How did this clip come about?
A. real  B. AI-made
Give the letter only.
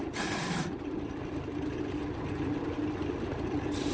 A